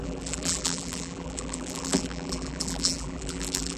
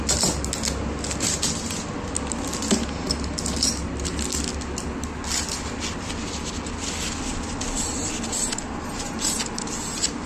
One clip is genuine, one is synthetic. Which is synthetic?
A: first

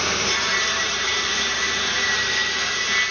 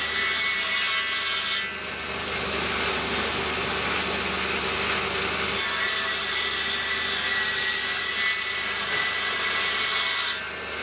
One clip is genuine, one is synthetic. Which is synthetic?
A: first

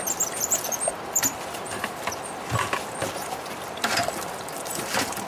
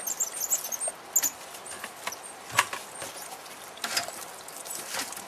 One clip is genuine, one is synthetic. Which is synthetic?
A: first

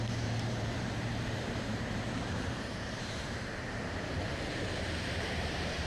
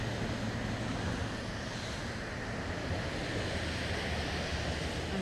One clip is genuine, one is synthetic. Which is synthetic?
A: first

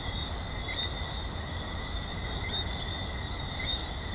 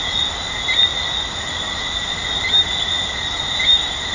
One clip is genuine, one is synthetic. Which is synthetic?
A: first